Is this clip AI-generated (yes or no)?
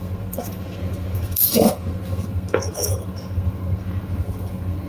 yes